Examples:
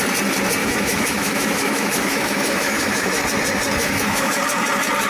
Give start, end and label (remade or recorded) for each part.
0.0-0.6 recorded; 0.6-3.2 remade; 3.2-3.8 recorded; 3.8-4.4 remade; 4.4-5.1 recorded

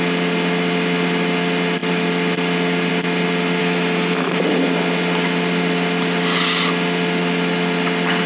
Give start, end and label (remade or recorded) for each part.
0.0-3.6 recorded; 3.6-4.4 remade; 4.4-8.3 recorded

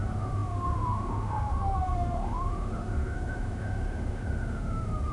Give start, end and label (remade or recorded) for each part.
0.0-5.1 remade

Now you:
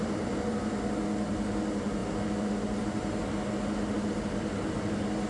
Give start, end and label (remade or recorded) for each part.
0.0-5.3 recorded

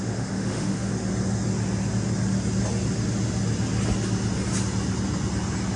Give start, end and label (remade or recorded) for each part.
0.0-0.9 remade; 0.9-5.8 recorded

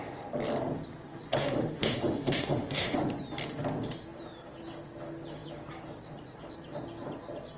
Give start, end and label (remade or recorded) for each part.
0.0-1.4 recorded; 1.4-3.0 remade; 3.0-7.6 recorded

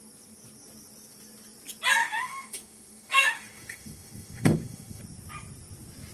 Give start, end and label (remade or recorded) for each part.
0.0-2.0 recorded; 2.0-5.0 remade; 5.0-6.1 recorded